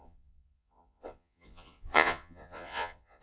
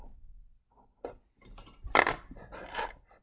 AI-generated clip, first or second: first